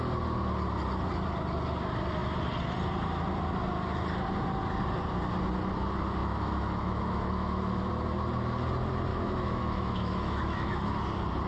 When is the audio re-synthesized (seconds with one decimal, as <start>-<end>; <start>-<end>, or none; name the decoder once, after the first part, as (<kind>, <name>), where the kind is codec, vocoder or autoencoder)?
6.2-7.9 (autoencoder, DAC-VAE); 9.1-11.0